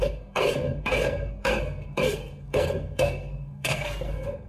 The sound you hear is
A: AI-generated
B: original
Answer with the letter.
A